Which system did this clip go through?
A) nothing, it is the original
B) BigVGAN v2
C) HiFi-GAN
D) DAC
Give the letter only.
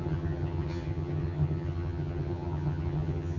C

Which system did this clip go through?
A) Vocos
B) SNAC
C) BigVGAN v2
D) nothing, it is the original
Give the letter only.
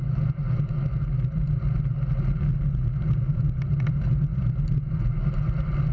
D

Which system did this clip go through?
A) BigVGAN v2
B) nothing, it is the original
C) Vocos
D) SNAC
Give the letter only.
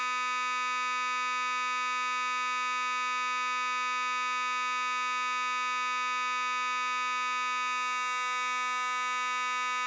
B